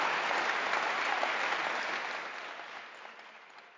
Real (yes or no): yes